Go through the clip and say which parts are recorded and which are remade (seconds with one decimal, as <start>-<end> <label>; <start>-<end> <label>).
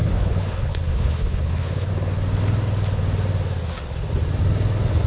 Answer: 0.0-1.9 remade; 1.9-5.1 recorded